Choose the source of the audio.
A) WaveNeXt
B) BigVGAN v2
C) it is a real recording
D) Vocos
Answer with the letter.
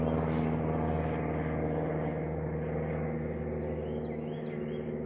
C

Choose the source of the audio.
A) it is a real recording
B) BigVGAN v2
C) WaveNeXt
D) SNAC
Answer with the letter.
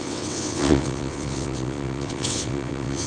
C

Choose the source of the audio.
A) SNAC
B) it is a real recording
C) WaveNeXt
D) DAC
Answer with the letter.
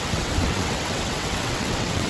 C